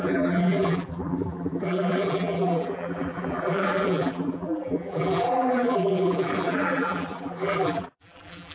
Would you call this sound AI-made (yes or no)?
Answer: yes